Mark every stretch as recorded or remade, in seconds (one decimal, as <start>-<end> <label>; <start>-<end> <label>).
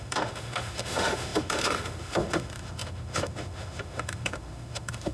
0.0-5.1 remade